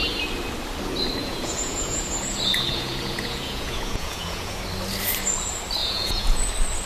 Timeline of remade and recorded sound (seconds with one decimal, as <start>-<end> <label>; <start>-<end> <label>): 0.0-1.2 recorded; 1.2-4.6 remade; 4.6-5.8 recorded; 5.8-6.5 remade; 6.5-6.9 recorded